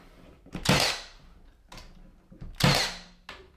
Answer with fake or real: real